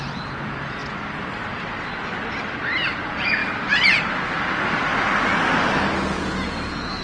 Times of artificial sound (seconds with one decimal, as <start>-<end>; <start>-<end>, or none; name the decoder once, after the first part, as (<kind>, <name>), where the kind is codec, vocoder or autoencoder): 0.0-0.8 (vocoder, Vocos); 3.0-3.4; 6.1-7.0